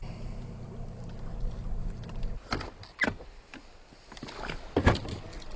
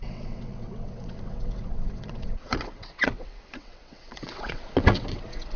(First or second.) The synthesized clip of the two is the second